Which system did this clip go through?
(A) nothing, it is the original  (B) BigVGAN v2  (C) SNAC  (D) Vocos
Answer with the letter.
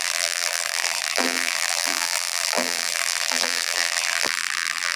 B